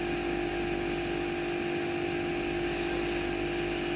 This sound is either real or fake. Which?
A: real